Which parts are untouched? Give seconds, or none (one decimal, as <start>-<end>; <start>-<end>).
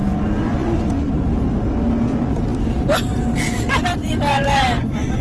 1.1-4.3